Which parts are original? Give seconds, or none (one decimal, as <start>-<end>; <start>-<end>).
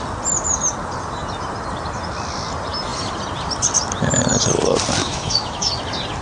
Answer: 0.0-5.0; 5.7-6.2